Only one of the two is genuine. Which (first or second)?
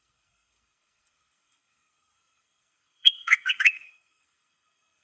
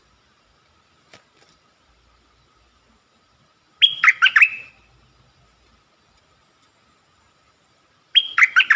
second